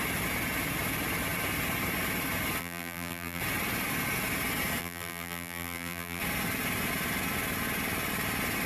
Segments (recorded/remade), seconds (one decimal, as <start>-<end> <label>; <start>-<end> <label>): 0.0-2.6 recorded; 2.6-3.4 remade; 3.4-4.8 recorded; 4.8-6.2 remade; 6.2-8.7 recorded